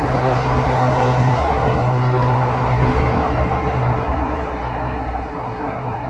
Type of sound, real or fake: fake